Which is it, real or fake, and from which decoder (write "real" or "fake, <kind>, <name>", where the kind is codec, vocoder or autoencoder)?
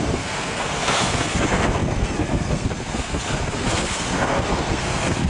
fake, codec, SNAC